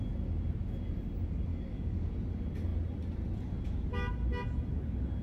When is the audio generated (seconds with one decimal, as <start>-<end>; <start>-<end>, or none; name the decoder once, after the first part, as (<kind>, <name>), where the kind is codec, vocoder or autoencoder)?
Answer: 1.5-2.1 (codec, DAC)